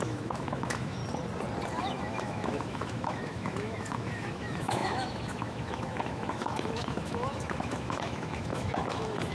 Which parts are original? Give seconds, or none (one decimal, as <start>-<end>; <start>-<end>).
1.0-1.8